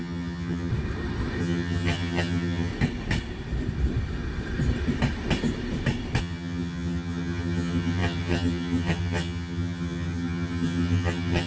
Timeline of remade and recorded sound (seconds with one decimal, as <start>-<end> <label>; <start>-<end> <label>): 0.0-0.7 remade; 0.7-1.4 recorded; 1.4-2.7 remade; 2.7-6.2 recorded; 6.2-11.5 remade

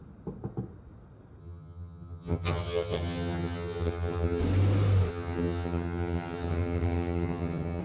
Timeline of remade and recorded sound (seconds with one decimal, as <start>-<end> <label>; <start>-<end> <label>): 0.0-1.4 recorded; 1.4-4.4 remade; 4.4-5.1 recorded; 5.1-7.8 remade

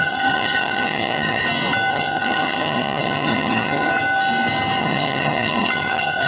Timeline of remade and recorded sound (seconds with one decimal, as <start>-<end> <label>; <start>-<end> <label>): 0.0-1.4 remade; 1.4-1.9 recorded; 1.9-3.9 remade; 3.9-4.8 recorded; 4.8-6.3 remade

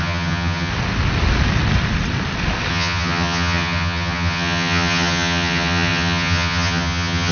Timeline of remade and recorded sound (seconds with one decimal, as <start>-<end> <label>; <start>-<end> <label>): 0.0-0.7 remade; 0.7-2.7 recorded; 2.7-7.3 remade

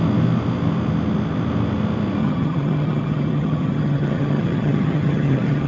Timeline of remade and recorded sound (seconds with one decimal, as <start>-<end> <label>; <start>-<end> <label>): 0.0-2.2 recorded; 2.2-5.7 remade